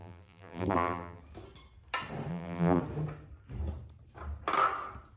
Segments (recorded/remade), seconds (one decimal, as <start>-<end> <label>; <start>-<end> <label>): 0.0-1.2 remade; 1.2-2.3 recorded; 2.3-2.8 remade; 2.8-5.2 recorded